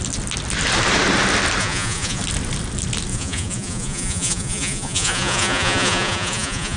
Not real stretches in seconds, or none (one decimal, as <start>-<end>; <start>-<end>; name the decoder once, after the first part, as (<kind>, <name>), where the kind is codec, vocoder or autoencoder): 1.6-2.2 (vocoder, Vocos); 3.1-6.8